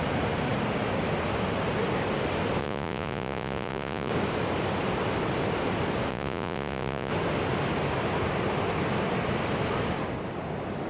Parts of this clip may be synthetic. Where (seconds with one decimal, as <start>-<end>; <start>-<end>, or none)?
2.6-4.1; 6.1-7.1